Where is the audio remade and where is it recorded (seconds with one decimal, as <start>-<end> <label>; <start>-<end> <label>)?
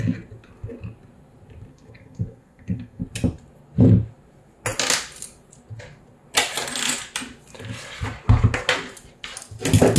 0.0-1.7 recorded; 1.7-3.0 remade; 3.0-10.0 recorded